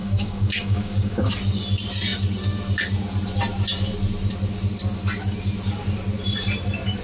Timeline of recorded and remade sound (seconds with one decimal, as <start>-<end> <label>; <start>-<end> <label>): 0.0-1.3 remade; 1.3-7.0 recorded